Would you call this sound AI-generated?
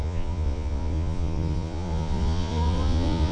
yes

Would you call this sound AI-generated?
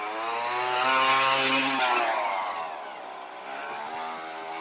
no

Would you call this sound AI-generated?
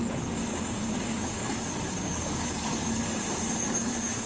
yes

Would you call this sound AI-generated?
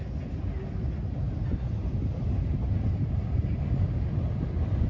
no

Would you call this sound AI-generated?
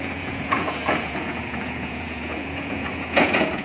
yes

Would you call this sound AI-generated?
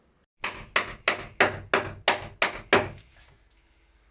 no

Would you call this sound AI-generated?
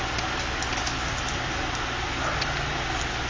no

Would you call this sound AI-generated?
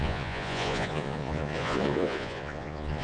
yes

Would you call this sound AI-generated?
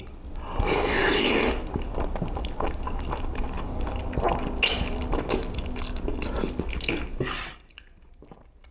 no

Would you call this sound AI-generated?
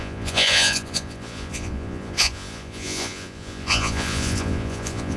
yes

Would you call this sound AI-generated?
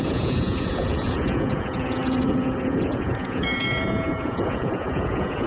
yes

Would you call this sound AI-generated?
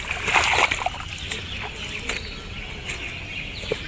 no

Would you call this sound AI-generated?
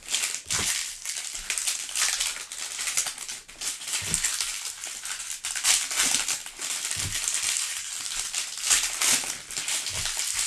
no